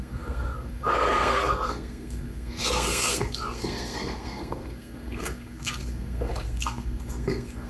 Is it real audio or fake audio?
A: fake